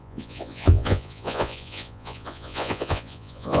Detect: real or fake fake